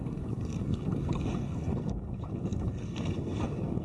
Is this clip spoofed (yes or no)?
yes